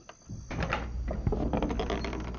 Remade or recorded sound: recorded